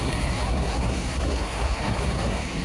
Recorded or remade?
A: remade